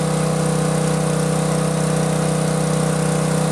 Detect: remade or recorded recorded